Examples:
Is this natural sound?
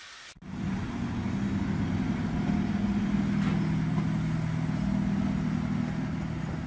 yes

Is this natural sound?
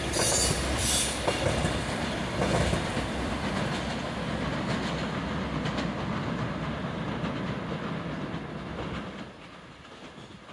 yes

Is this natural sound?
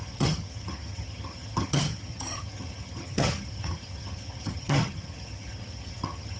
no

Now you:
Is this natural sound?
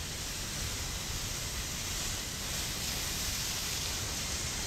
yes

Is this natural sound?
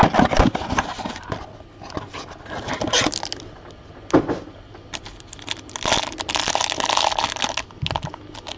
yes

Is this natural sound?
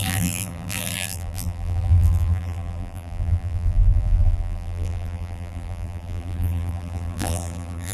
no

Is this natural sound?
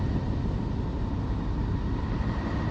yes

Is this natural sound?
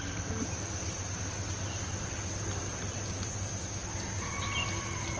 yes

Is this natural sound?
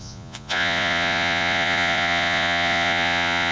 no